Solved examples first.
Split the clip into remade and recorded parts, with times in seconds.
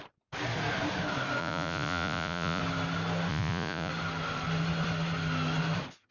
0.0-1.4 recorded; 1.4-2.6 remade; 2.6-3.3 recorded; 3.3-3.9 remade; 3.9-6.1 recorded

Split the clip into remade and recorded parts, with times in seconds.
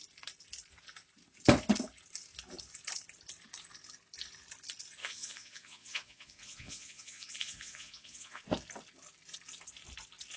0.0-5.0 recorded; 5.0-8.4 remade; 8.4-10.4 recorded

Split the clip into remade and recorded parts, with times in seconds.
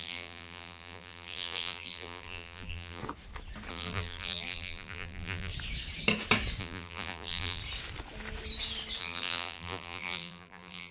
0.0-3.0 remade; 3.0-3.7 recorded; 3.7-5.5 remade; 5.5-6.6 recorded; 6.6-7.6 remade; 7.6-9.0 recorded; 9.0-10.9 remade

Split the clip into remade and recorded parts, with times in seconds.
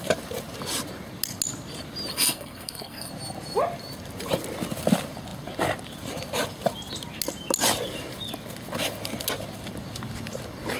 0.0-2.1 recorded; 2.1-3.1 remade; 3.1-10.8 recorded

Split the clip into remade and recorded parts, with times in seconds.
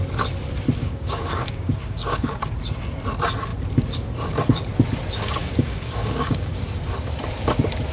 0.0-0.8 recorded; 0.8-2.4 remade; 2.4-5.4 recorded; 5.4-6.5 remade; 6.5-7.9 recorded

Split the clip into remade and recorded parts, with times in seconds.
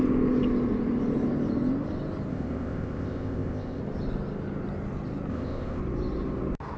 0.0-2.3 recorded; 2.3-3.8 remade; 3.8-5.3 recorded; 5.3-5.8 remade; 5.8-6.8 recorded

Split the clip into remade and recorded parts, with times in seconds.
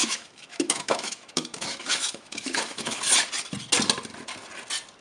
0.0-3.0 remade; 3.0-5.0 recorded